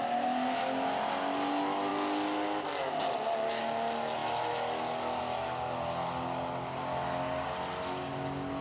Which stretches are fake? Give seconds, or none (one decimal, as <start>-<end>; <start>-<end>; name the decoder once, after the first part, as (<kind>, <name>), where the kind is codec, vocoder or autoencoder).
none